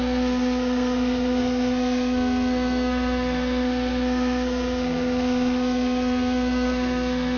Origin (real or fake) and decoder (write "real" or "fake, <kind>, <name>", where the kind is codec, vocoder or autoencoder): fake, codec, SNAC